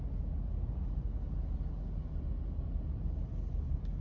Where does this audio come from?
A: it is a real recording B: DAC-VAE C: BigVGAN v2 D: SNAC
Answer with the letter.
A